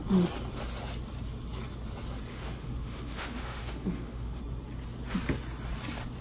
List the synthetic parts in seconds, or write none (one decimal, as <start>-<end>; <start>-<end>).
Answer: 2.3-4.4